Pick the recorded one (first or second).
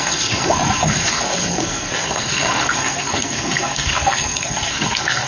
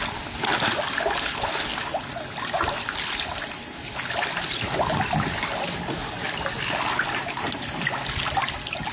second